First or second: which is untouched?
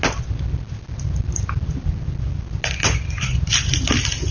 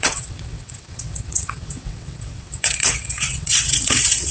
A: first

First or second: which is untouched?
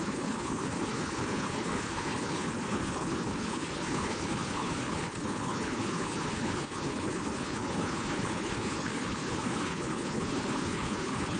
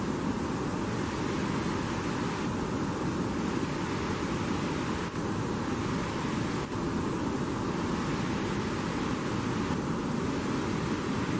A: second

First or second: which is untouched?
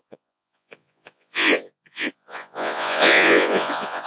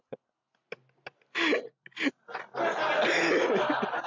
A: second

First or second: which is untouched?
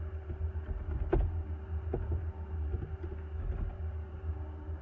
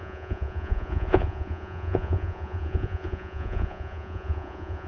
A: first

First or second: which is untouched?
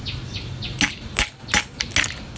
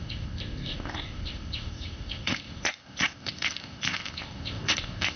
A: first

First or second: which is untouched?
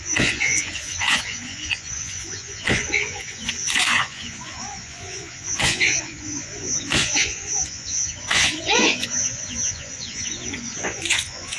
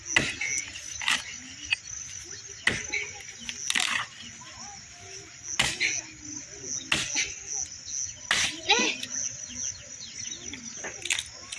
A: second